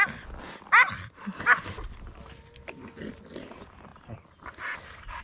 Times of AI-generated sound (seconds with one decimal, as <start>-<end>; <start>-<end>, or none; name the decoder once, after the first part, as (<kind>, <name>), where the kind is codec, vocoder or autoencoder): none